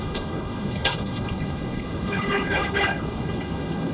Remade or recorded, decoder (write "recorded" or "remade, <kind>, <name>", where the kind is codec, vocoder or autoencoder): remade, codec, HILCodec